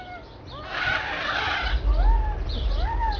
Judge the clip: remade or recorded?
recorded